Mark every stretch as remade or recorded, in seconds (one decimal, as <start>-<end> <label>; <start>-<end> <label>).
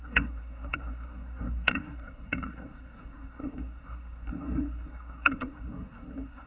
0.0-6.5 remade